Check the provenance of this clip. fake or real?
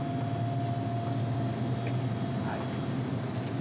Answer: real